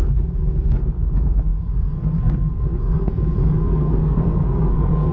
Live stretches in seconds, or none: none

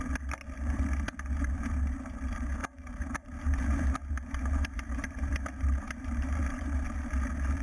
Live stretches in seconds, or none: 0.0-2.6; 6.4-7.6

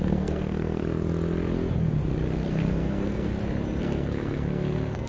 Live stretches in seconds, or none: 0.8-2.5; 3.3-3.8

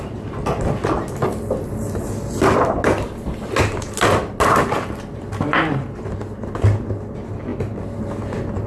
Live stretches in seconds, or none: 0.0-8.7

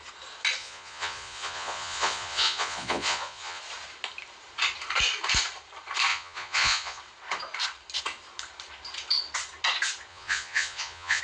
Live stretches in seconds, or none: 0.0-0.6; 3.6-6.1; 7.0-10.1

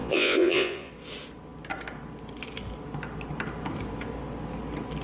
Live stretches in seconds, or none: 0.9-5.0

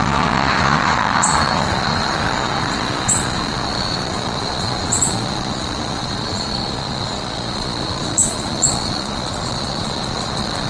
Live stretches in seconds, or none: none

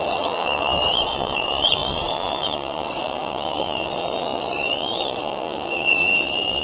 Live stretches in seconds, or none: none